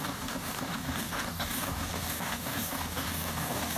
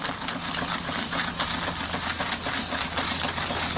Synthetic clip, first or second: first